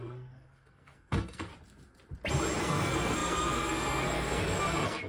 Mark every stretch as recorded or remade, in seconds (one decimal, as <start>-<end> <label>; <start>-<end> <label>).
0.0-1.5 remade; 1.5-2.6 recorded; 2.6-5.1 remade